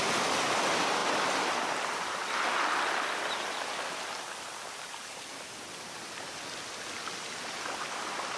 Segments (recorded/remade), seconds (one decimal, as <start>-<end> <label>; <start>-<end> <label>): 0.0-8.4 recorded